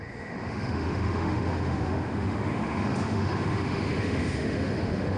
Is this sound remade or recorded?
remade